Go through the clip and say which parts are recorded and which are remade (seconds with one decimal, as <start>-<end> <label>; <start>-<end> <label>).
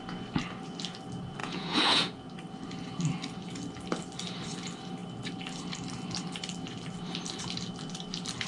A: 0.0-1.4 recorded; 1.4-2.3 remade; 2.3-8.5 recorded